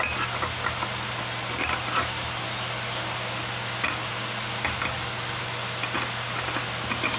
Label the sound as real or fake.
real